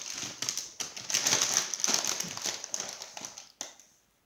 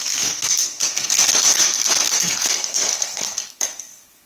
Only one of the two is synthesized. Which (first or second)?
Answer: second